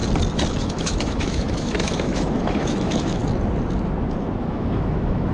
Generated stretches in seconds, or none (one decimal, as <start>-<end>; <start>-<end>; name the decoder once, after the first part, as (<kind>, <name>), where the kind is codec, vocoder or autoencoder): 0.6-3.2 (autoencoder, DAC-VAE); 4.4-5.3